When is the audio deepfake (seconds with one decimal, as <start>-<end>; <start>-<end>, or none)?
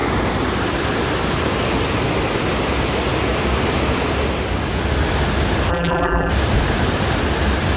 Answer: 5.7-6.3